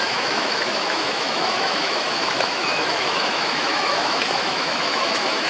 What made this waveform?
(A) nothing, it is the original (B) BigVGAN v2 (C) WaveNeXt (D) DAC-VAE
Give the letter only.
D